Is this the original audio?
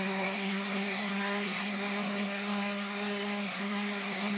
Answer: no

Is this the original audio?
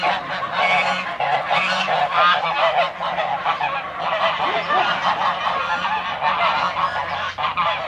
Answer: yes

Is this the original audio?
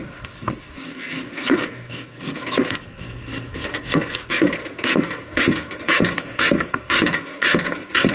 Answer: no